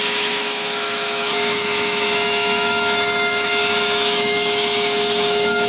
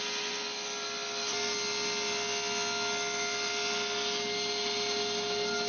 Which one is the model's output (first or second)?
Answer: first